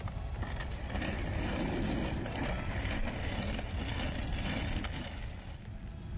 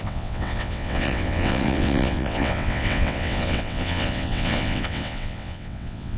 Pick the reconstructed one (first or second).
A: second